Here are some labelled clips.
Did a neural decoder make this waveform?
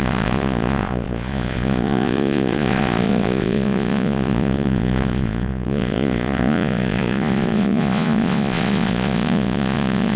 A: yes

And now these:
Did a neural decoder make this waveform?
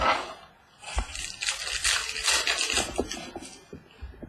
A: no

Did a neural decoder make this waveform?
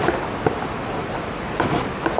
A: no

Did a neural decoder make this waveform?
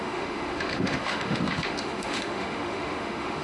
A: yes